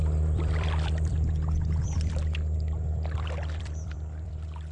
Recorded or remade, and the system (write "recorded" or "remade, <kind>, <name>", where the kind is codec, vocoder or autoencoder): remade, vocoder, BigVGAN v2